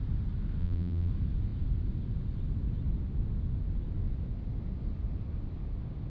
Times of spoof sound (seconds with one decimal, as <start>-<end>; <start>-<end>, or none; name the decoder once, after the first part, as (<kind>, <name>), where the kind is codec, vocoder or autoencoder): 0.6-1.1 (vocoder, BigVGAN v2)